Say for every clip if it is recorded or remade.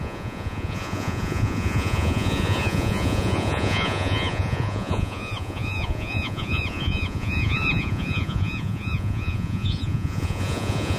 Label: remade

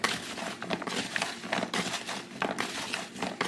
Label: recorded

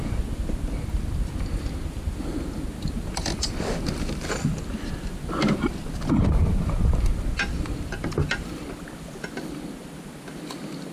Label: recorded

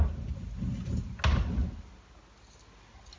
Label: recorded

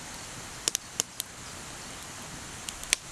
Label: recorded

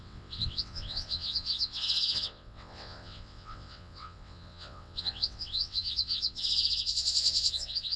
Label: remade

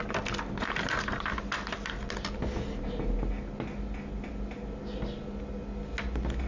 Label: recorded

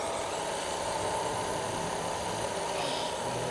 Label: recorded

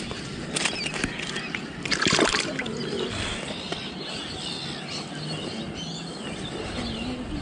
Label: recorded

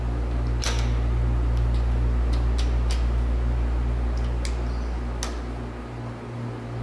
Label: recorded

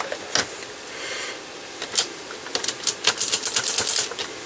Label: recorded